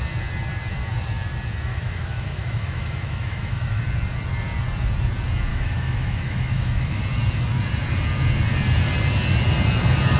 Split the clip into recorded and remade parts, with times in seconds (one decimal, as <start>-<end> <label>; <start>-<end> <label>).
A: 0.0-1.7 recorded; 1.7-3.8 remade; 3.8-5.5 recorded; 5.5-7.0 remade; 7.0-10.2 recorded